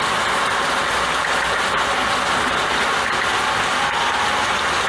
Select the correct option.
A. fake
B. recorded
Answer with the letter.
B